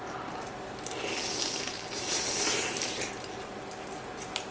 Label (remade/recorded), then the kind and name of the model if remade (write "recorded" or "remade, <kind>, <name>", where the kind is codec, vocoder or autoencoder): recorded